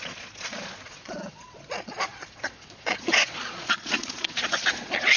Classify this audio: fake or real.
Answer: fake